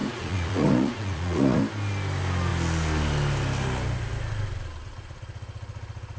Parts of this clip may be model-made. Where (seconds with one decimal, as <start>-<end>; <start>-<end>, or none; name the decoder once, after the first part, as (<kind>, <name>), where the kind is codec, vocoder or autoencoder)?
0.0-1.6 (vocoder, Vocos)